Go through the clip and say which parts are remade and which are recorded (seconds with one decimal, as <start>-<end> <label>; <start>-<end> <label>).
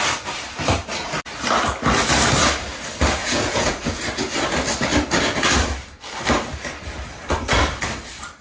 0.0-3.2 recorded; 3.2-4.0 remade; 4.0-8.4 recorded